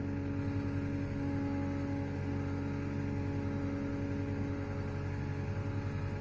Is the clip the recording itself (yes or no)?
yes